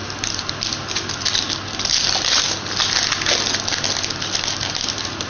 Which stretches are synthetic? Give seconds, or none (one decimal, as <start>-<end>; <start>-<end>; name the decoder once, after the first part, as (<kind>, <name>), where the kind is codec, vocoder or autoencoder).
none